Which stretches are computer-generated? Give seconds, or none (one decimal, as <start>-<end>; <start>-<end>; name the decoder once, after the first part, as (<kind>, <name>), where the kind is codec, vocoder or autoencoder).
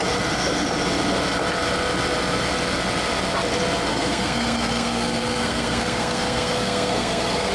3.9-7.5 (codec, SNAC)